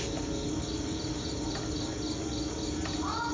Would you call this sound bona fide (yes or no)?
yes